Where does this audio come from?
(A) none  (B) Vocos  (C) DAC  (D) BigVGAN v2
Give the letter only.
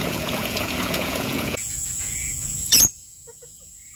B